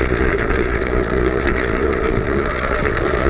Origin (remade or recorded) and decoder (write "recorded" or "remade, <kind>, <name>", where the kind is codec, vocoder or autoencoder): remade, vocoder, Vocos